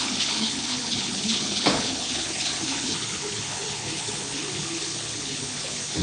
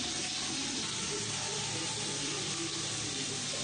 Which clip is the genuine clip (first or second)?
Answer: second